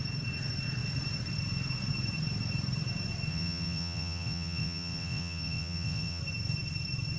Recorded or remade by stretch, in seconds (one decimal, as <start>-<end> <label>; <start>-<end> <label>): 0.0-3.3 recorded; 3.3-6.2 remade; 6.2-7.2 recorded